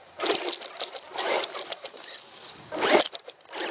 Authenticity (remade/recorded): recorded